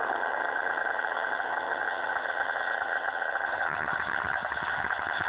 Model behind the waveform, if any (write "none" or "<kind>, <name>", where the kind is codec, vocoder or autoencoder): vocoder, HiFi-GAN